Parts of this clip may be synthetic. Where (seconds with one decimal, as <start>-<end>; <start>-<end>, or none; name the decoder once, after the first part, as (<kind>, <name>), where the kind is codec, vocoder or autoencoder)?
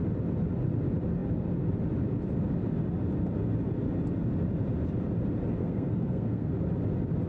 5.6-6.5 (codec, SNAC)